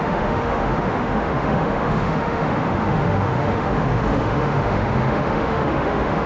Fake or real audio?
fake